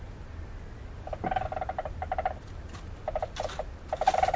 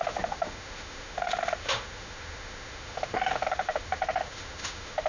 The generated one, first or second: second